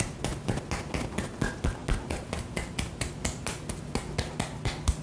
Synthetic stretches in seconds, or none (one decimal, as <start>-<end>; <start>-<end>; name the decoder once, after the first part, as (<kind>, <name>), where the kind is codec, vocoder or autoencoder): none